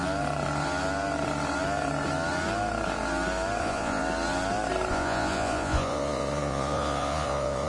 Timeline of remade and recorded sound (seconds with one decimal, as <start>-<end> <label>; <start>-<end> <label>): 0.0-3.6 recorded; 3.6-4.0 remade; 4.0-4.9 recorded; 4.9-7.7 remade